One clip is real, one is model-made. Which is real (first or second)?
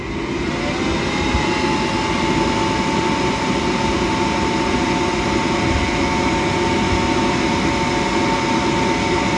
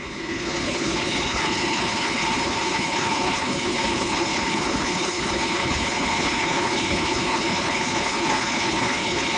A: first